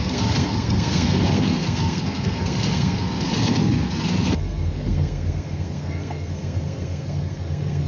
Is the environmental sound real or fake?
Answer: fake